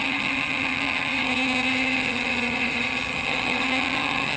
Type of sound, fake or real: fake